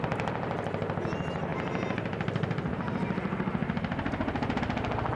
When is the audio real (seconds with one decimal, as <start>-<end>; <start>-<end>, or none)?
0.0-1.5; 4.6-5.2